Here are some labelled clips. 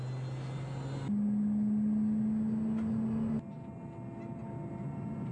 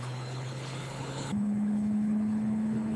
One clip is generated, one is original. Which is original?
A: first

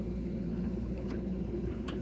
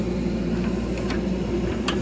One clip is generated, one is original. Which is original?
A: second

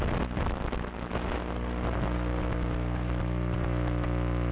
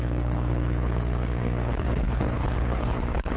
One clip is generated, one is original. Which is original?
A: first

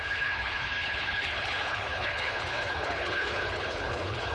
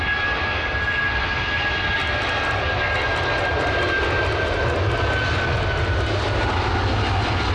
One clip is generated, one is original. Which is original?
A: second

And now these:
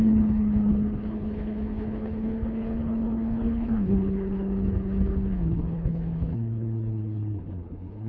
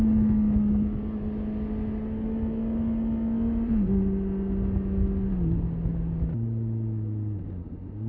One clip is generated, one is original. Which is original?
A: second